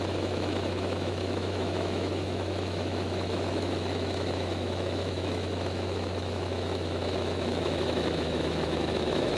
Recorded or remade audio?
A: remade